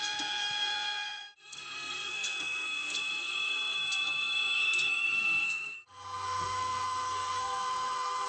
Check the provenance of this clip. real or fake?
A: fake